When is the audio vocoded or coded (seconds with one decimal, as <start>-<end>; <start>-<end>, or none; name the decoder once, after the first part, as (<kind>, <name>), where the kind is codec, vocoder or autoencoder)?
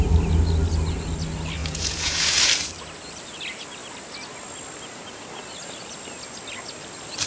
1.6-2.4 (vocoder, Vocos)